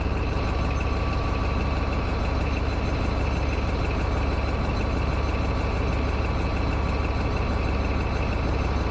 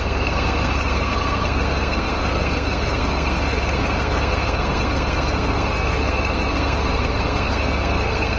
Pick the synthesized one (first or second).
second